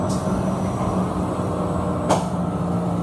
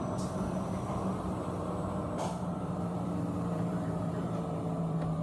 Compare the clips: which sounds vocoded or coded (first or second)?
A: second